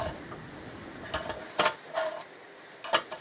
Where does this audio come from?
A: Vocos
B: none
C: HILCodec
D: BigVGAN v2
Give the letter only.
B